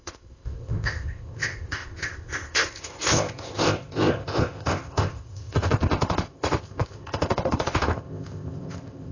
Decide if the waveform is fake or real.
fake